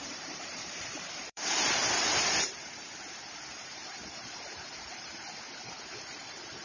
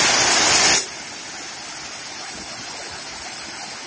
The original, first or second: second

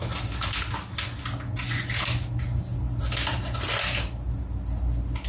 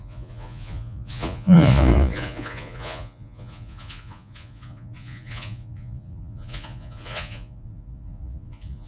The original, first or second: first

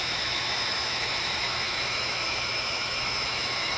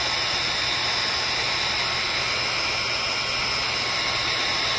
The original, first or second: second